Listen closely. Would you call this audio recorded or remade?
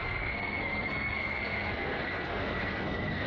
remade